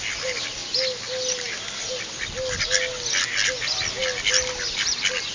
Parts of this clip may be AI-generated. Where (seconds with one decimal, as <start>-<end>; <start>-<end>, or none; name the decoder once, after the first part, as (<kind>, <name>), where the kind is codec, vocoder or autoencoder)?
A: none